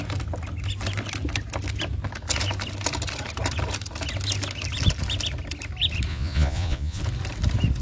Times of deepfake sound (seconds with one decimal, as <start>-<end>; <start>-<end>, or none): 6.1-7.0